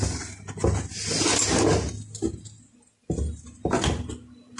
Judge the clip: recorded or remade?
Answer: recorded